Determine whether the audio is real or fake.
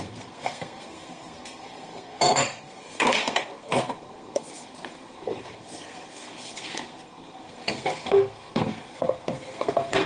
fake